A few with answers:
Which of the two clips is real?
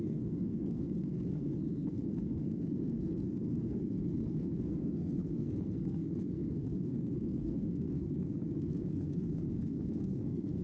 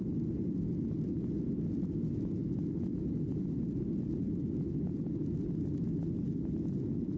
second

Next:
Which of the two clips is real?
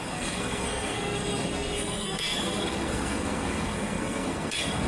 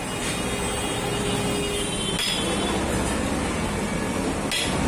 second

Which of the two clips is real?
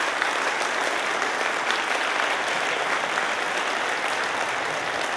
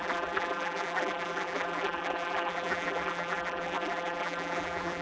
first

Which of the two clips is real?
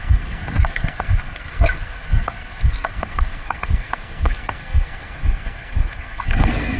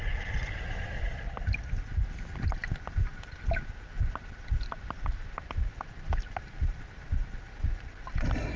second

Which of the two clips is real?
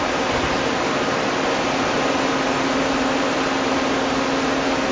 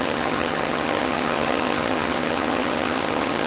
first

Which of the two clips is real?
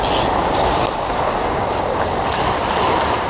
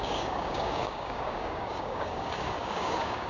first